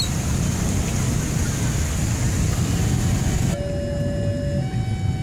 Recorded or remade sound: recorded